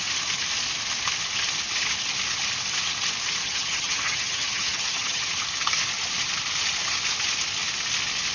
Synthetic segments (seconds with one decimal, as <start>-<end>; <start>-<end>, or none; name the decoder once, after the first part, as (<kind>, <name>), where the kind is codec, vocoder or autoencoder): 3.4-5.3 (vocoder, HiFi-GAN)